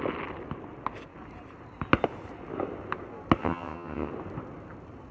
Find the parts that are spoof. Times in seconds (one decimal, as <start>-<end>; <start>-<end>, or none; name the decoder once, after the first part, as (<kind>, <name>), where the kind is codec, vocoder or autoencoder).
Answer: 3.4-4.1 (vocoder, HiFi-GAN)